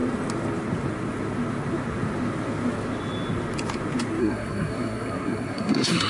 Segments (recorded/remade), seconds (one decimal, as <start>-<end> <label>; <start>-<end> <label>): 0.0-4.2 recorded; 4.2-6.1 remade